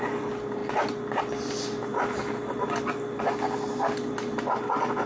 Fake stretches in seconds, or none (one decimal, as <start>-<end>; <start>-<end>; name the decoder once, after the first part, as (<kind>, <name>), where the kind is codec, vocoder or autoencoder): none